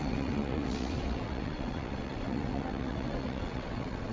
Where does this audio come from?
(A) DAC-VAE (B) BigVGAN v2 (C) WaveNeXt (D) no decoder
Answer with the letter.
C